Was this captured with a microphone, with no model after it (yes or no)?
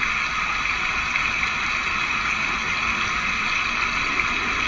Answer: yes